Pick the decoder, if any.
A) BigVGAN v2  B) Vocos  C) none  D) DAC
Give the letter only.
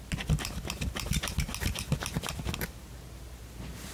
C